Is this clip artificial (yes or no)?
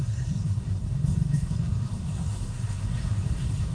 yes